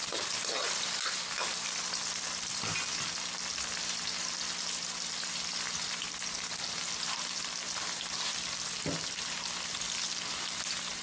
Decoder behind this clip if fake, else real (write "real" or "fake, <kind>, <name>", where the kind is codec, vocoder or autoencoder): real